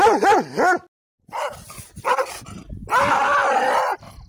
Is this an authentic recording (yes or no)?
yes